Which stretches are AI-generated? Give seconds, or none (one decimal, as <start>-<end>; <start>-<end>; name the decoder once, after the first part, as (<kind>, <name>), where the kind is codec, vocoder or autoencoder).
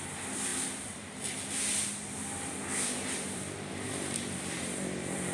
0.0-5.3 (vocoder, BigVGAN v2)